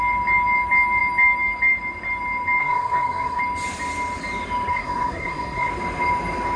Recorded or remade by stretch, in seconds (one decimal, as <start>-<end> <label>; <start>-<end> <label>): 0.0-2.6 recorded; 2.6-3.4 remade; 3.4-4.7 recorded; 4.7-5.7 remade; 5.7-6.6 recorded